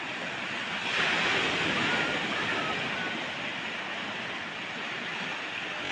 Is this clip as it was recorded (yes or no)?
yes